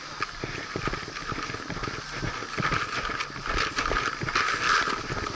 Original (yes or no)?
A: yes